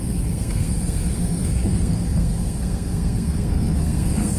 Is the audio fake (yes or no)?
yes